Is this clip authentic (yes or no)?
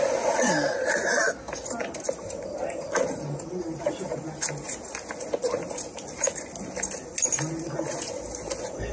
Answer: yes